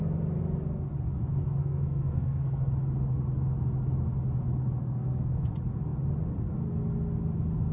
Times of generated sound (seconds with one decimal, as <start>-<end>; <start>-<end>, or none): 1.6-2.7; 4.8-5.5